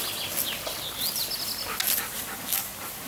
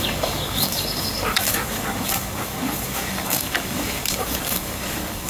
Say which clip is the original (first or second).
first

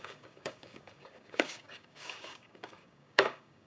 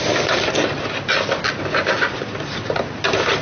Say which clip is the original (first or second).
second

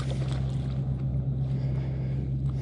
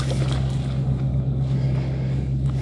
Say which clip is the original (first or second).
first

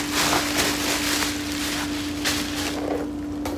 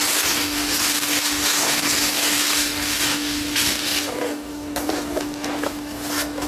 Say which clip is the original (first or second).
first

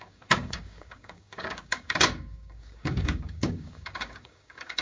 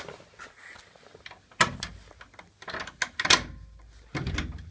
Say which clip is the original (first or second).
second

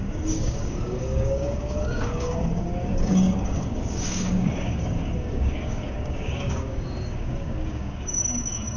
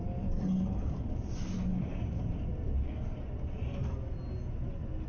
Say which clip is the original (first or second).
second